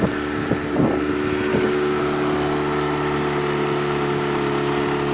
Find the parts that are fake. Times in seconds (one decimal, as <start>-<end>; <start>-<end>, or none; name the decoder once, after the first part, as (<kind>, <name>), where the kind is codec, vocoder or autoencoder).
1.5-2.0 (codec, DAC)